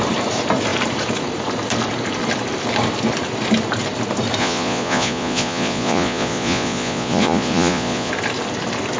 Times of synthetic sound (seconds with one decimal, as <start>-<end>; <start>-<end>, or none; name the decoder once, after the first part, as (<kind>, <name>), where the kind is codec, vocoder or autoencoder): 4.4-8.1 (vocoder, Vocos)